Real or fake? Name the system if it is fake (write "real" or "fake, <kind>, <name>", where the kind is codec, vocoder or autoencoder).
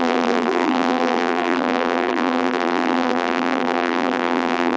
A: fake, vocoder, BigVGAN v2